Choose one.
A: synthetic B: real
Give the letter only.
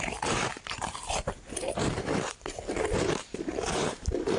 A